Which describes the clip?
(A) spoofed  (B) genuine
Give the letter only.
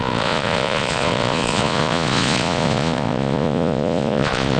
A